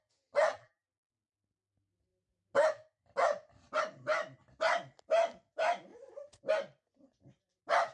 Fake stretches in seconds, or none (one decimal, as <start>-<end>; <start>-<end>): 0.5-1.1